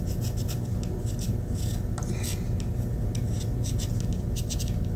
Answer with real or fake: real